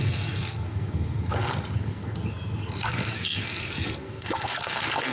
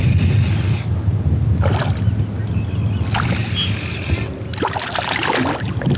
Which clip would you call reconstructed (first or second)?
first